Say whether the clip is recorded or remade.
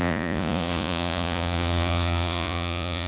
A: remade